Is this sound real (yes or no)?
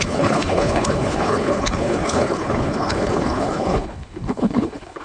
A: no